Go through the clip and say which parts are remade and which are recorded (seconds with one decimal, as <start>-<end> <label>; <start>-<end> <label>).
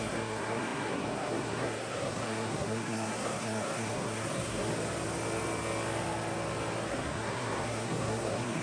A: 0.0-4.7 remade; 4.7-6.9 recorded; 6.9-8.6 remade